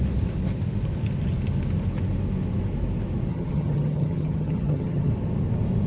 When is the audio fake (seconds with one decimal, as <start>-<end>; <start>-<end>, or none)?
3.3-5.1